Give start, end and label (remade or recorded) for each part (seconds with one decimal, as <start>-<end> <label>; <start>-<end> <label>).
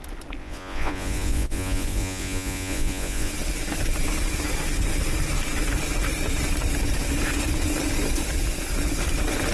0.0-0.4 recorded; 0.4-3.3 remade; 3.3-9.5 recorded